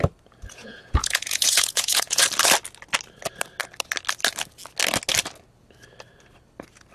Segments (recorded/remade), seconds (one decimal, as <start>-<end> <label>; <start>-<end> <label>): 0.0-0.6 recorded; 0.6-2.2 remade; 2.2-6.9 recorded